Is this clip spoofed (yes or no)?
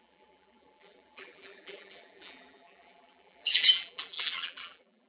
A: yes